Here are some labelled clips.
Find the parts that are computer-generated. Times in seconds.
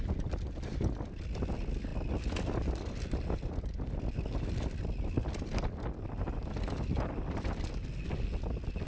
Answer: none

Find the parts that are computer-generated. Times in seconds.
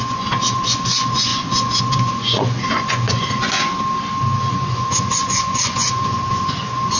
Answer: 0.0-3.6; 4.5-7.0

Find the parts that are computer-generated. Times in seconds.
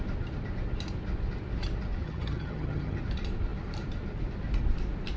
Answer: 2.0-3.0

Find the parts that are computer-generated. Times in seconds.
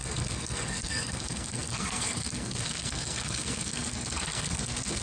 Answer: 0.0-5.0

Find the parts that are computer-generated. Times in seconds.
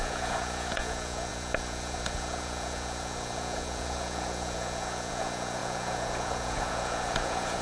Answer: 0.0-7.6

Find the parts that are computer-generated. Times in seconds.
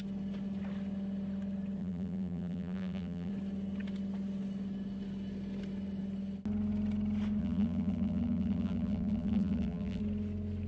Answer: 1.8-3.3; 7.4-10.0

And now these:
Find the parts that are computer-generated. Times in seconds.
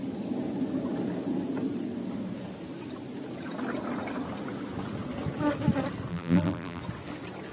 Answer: 6.1-6.8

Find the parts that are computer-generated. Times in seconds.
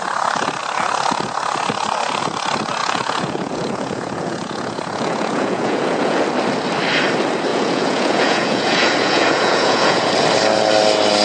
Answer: 2.8-6.2; 7.5-10.1